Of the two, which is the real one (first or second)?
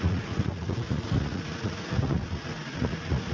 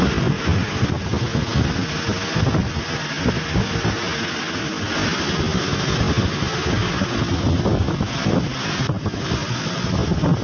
second